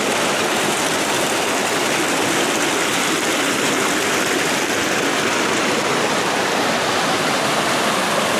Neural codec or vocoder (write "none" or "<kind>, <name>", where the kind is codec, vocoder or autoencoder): none